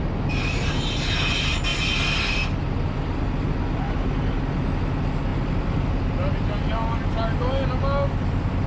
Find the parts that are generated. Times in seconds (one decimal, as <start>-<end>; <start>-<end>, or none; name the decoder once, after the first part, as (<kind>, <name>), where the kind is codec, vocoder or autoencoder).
none